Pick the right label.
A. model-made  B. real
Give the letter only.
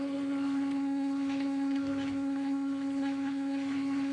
A